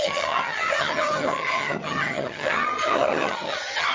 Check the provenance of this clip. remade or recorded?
remade